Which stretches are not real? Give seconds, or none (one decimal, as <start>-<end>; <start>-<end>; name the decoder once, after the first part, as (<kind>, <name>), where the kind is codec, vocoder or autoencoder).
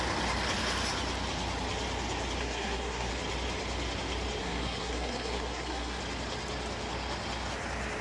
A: 2.4-3.1 (codec, SNAC); 4.4-6.0